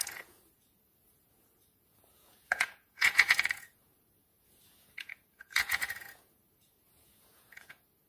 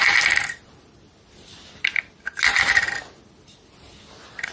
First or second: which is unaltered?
second